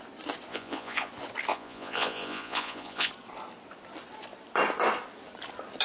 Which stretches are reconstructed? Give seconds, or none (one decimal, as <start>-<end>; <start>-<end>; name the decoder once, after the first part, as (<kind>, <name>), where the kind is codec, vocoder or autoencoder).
0.5-1.1 (vocoder, Vocos); 1.5-3.1